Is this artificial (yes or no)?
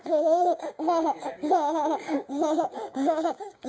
yes